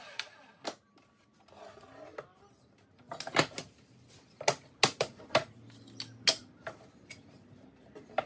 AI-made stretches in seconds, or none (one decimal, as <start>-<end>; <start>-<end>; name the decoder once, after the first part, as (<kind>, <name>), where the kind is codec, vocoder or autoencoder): none